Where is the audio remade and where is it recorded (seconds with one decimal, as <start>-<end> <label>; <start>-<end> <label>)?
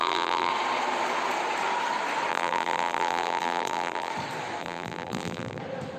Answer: 0.0-0.5 remade; 0.5-2.3 recorded; 2.3-4.1 remade; 4.1-4.6 recorded; 4.6-5.6 remade; 5.6-6.0 recorded